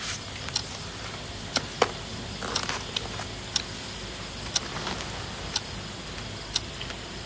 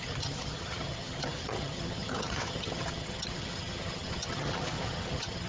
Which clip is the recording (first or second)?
first